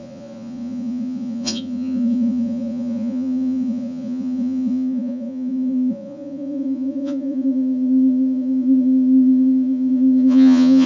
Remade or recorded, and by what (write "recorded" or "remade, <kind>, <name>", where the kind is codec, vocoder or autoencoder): remade, vocoder, Vocos